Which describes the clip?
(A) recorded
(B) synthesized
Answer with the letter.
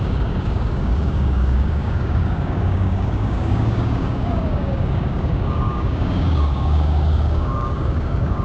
B